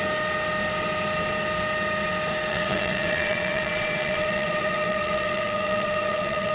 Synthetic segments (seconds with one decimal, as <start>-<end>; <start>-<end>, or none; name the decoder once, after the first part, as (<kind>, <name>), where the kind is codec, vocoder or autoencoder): 2.5-6.5 (vocoder, WaveNeXt)